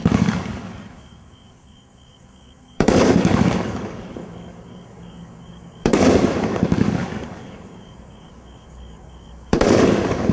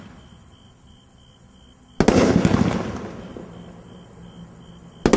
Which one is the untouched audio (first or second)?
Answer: second